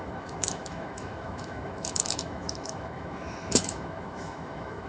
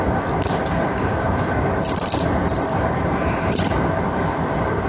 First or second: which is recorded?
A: second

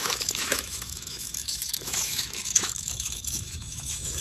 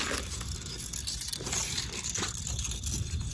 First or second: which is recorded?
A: second